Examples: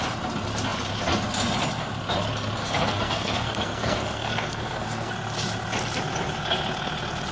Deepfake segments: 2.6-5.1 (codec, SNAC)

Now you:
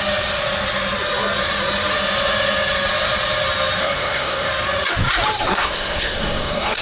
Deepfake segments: 3.8-4.5 (codec, SNAC); 5.5-6.8

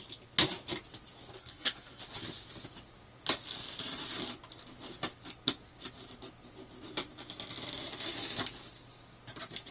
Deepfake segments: 1.4-2.0 (codec, SNAC)

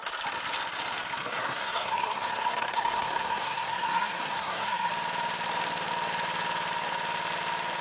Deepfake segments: 1.2-4.9 (codec, SNAC)

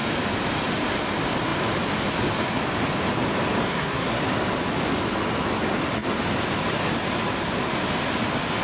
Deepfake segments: 3.6-4.2 (codec, SNAC)

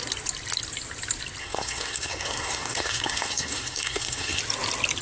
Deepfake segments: 1.4-4.4 (codec, SNAC)